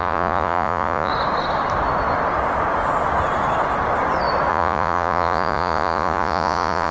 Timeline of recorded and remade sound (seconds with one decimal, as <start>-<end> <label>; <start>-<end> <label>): 0.0-1.1 remade; 1.1-4.5 recorded; 4.5-6.9 remade